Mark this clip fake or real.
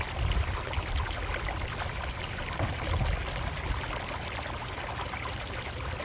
real